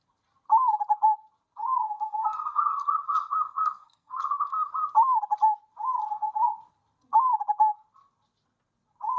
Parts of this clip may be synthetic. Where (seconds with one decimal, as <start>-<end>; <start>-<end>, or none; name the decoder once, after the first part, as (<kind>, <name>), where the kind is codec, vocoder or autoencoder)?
1.8-4.7 (codec, SNAC)